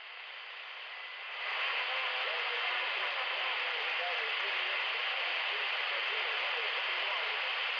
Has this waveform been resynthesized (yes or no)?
no